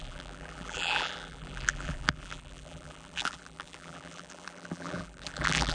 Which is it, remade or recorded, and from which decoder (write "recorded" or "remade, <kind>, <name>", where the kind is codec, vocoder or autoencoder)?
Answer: remade, vocoder, BigVGAN v2